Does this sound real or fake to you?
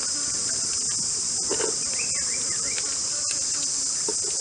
real